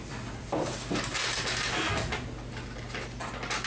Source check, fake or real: real